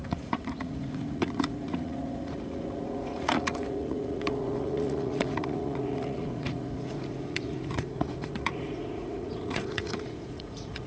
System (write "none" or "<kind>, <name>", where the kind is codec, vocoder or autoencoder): vocoder, Vocos